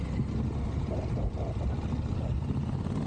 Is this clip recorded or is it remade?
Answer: recorded